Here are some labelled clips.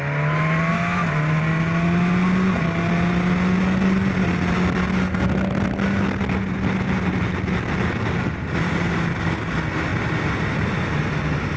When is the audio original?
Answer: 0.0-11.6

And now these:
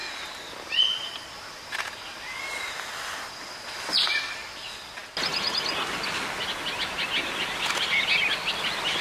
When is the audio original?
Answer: 0.0-9.0

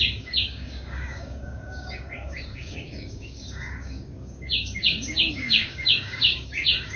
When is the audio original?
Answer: none